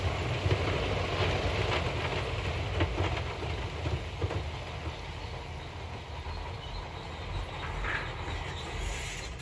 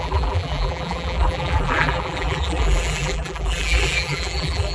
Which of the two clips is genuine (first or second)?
first